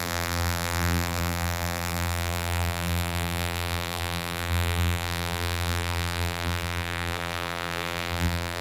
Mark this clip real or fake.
fake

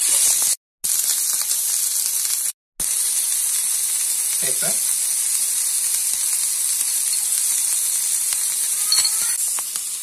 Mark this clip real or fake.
real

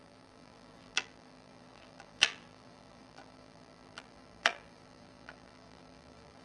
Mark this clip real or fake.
fake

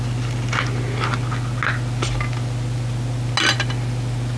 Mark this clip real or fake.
real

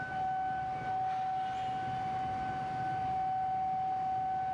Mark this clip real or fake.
real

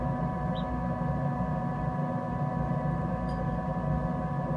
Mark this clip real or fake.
fake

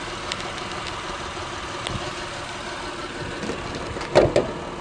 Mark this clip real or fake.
real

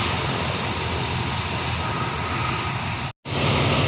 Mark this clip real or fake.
real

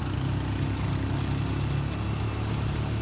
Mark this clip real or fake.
real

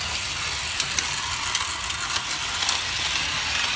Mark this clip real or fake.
real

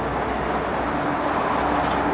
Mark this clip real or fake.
real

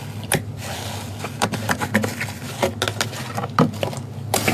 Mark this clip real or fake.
real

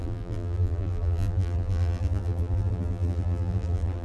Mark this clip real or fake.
fake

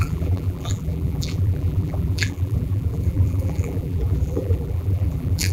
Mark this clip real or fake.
fake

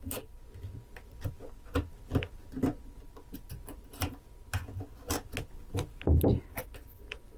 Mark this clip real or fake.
real